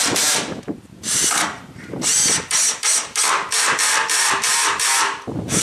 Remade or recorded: recorded